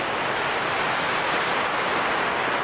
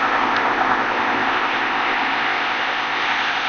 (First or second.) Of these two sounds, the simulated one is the second